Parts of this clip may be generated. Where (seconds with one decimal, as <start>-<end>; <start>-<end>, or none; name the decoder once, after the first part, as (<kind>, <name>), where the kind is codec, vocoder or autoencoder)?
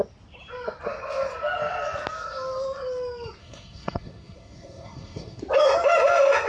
3.4-5.4 (codec, SNAC)